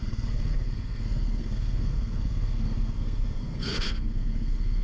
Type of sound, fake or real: fake